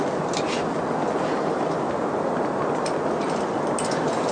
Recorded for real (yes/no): yes